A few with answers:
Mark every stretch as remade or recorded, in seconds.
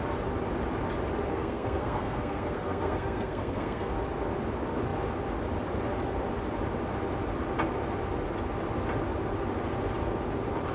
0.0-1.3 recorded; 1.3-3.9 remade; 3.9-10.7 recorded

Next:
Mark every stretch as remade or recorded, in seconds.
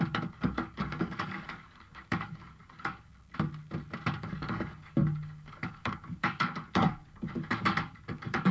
0.0-3.1 remade; 3.1-4.2 recorded; 4.2-8.5 remade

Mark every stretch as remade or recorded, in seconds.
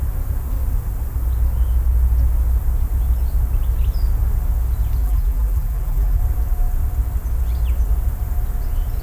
0.0-5.0 recorded; 5.0-6.2 remade; 6.2-9.0 recorded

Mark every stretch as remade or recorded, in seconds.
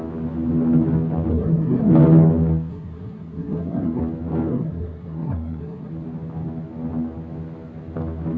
0.0-1.3 recorded; 1.3-1.9 remade; 1.9-2.7 recorded; 2.7-4.0 remade; 4.0-4.5 recorded; 4.5-5.9 remade; 5.9-8.4 recorded